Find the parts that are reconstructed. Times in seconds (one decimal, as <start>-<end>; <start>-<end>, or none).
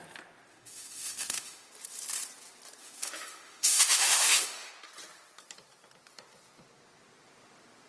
0.5-1.7; 2.8-4.7